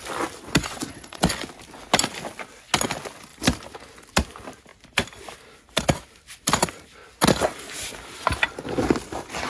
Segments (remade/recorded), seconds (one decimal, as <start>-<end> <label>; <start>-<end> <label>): 0.0-0.6 recorded; 0.6-1.2 remade; 1.2-9.5 recorded